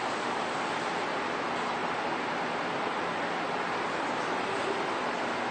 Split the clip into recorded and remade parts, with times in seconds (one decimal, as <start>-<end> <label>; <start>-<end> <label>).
0.0-5.5 recorded

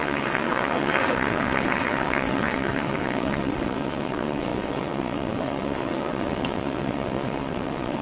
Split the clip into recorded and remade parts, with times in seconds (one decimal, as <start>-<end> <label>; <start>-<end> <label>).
0.0-8.0 remade

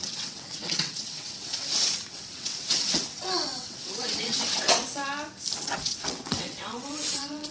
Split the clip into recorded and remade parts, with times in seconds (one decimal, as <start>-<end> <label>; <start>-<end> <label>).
0.0-5.0 remade; 5.0-5.6 recorded; 5.6-7.5 remade

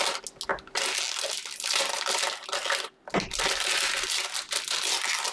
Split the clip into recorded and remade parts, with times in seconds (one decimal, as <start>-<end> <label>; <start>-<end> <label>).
0.0-5.3 recorded

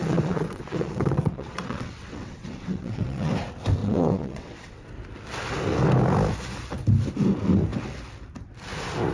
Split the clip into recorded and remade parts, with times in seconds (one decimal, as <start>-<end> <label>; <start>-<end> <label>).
0.0-3.3 remade; 3.3-3.8 recorded; 3.8-4.9 remade; 4.9-9.1 recorded

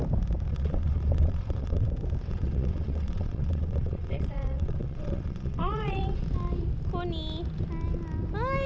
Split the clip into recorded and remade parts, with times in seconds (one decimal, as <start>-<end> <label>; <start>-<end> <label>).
0.0-0.5 recorded; 0.5-1.9 remade; 1.9-2.3 recorded; 2.3-6.2 remade; 6.2-8.7 recorded